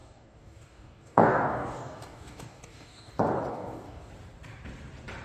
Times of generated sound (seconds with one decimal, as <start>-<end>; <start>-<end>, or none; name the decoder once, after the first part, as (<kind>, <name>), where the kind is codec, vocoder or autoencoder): 0.0-3.1 (codec, DAC); 3.5-4.1